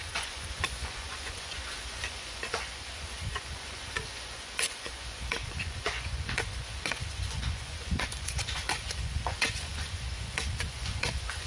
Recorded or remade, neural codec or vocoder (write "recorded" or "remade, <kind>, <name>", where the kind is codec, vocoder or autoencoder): remade, vocoder, Vocos